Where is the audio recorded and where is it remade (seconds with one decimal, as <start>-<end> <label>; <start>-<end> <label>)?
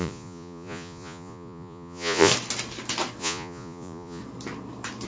0.0-2.3 remade; 2.3-3.2 recorded; 3.2-4.2 remade; 4.2-5.1 recorded